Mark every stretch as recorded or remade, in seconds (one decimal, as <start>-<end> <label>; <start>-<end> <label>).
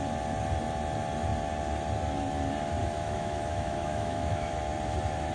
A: 0.0-2.8 recorded; 2.8-4.5 remade; 4.5-5.3 recorded